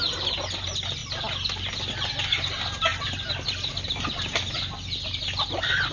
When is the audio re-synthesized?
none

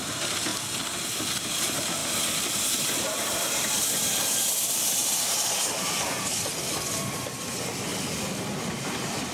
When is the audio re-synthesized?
0.0-2.0 (vocoder, BigVGAN v2); 4.4-7.9; 8.6-9.3

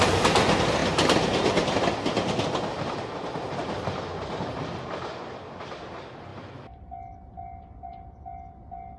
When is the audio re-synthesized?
none

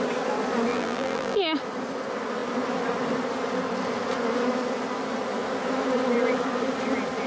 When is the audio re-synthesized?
0.7-1.4 (vocoder, BigVGAN v2)

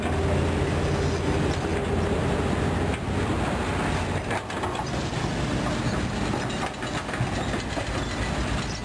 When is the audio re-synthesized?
none

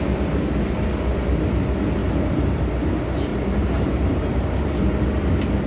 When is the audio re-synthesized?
2.0-2.6 (vocoder, BigVGAN v2); 3.3-4.8

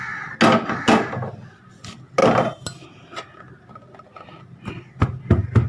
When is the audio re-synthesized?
none